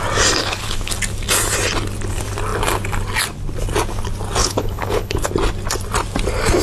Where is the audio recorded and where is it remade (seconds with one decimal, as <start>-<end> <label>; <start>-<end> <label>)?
0.0-0.4 recorded; 0.4-0.9 remade; 0.9-4.4 recorded; 4.4-5.3 remade; 5.3-6.6 recorded